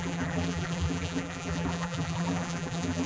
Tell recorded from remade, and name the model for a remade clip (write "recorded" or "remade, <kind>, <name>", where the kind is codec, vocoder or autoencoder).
remade, vocoder, BigVGAN v2